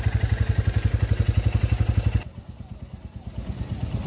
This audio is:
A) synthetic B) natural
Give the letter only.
B